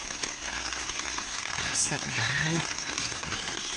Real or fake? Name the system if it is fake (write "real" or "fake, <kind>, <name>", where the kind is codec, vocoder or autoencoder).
fake, codec, SNAC